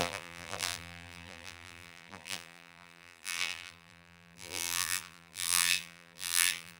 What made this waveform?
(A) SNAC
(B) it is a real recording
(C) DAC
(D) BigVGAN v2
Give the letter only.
D